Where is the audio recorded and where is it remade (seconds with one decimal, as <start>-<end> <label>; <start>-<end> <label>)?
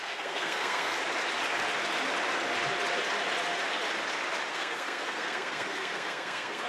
0.0-0.9 remade; 0.9-4.5 recorded; 4.5-6.7 remade